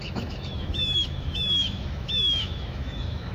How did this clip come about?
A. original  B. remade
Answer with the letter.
B